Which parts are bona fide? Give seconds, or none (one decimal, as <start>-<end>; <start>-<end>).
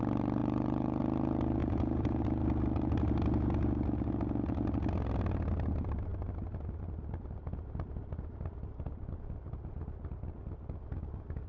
0.0-0.4; 1.0-1.6; 2.2-11.5